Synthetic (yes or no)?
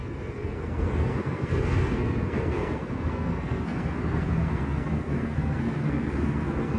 yes